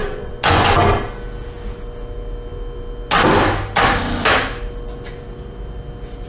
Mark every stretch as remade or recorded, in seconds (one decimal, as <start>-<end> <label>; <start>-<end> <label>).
0.0-0.7 remade; 0.7-6.3 recorded

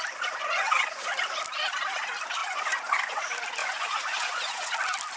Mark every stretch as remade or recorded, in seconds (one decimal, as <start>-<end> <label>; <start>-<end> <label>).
0.0-0.4 recorded; 0.4-1.0 remade; 1.0-2.4 recorded; 2.4-3.2 remade; 3.2-3.6 recorded; 3.6-4.7 remade; 4.7-5.2 recorded

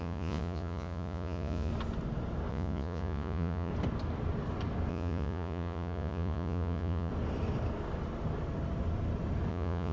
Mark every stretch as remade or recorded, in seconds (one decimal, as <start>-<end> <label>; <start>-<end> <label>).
0.0-1.7 remade; 1.7-2.5 recorded; 2.5-3.7 remade; 3.7-4.9 recorded; 4.9-7.1 remade; 7.1-9.5 recorded; 9.5-9.9 remade

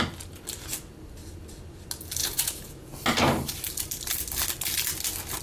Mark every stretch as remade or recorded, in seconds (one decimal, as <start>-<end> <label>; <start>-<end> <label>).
0.0-2.2 recorded; 2.2-3.0 remade; 3.0-5.4 recorded

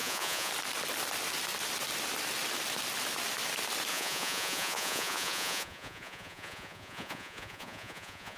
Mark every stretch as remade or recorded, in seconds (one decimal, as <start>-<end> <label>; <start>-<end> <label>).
0.0-0.5 remade; 0.5-3.9 recorded; 3.9-8.4 remade

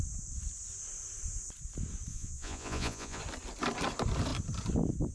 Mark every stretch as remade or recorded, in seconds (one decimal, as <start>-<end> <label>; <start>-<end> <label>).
0.0-2.1 recorded; 2.1-3.2 remade; 3.2-5.1 recorded

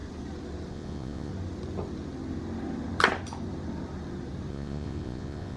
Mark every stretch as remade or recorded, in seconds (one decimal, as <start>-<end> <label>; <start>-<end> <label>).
0.0-0.7 recorded; 0.7-1.3 remade; 1.3-4.5 recorded; 4.5-5.6 remade